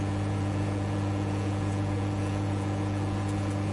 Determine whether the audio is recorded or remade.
remade